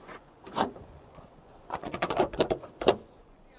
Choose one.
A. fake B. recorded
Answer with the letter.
A